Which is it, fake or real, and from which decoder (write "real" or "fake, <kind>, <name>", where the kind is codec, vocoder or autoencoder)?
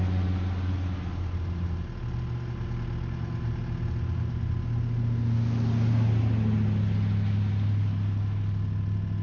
real